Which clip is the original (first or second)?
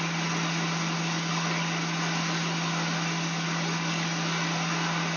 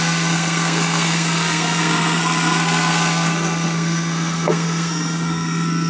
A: first